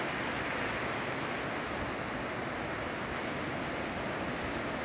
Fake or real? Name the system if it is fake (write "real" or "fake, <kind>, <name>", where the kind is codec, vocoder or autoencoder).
real